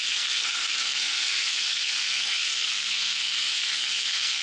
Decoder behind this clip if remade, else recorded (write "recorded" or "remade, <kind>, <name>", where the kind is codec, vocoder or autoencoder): remade, codec, SNAC